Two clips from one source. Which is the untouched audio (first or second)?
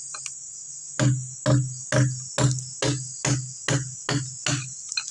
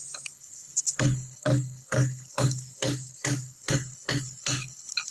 first